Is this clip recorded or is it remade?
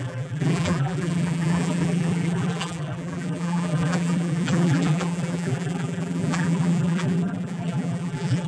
remade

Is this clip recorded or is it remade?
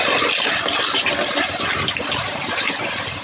recorded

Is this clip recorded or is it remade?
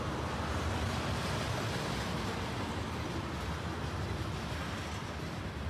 recorded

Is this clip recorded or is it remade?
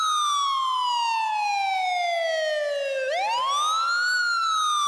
recorded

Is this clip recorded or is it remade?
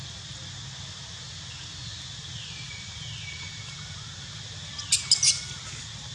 recorded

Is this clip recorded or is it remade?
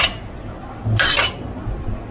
recorded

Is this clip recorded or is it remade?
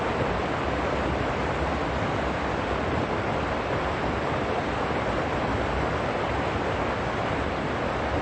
recorded